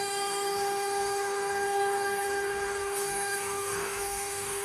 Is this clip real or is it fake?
fake